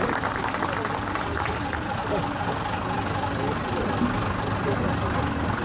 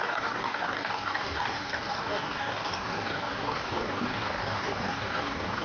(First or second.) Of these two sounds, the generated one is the second